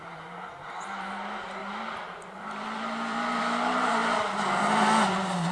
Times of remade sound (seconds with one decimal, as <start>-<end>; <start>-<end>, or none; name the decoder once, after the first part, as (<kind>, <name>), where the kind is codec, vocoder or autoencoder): 0.0-5.5 (vocoder, BigVGAN v2)